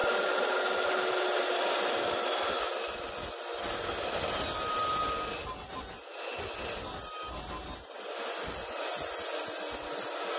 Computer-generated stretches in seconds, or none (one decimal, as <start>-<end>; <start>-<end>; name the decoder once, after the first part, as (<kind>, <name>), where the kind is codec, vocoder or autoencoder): none